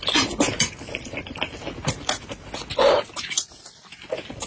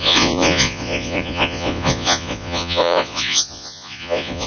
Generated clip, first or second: second